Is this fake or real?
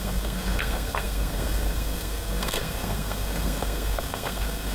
fake